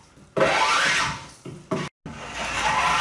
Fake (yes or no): no